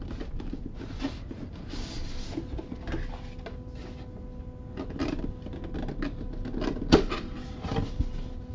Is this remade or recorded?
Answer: recorded